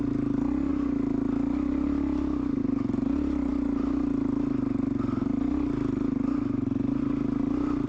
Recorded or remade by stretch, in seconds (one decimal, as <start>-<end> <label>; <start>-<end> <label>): 0.0-7.9 recorded